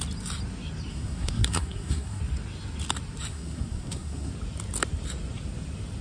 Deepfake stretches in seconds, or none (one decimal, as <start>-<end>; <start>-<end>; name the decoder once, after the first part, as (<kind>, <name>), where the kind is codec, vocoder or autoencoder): 0.9-2.2 (codec, SNAC); 3.3-4.3